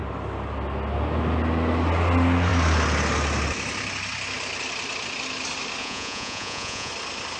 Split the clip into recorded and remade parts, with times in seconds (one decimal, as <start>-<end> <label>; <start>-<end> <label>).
0.0-5.8 recorded; 5.8-6.9 remade; 6.9-7.4 recorded